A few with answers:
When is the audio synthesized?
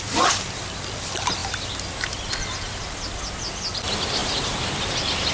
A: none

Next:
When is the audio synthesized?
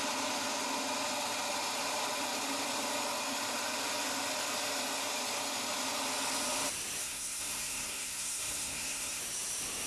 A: 7.0-9.2 (codec, SNAC)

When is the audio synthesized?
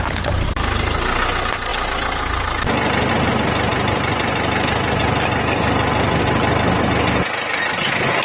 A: none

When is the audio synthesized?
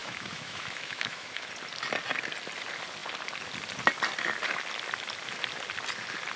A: 0.0-1.5 (autoencoder, DAC-VAE)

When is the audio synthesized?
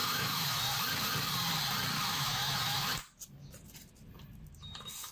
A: 0.0-0.6 (autoencoder, DAC-VAE); 2.1-2.9